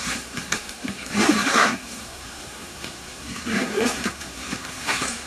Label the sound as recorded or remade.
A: remade